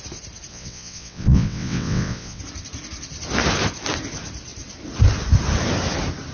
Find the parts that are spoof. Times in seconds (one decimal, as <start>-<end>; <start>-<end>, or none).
0.5-2.4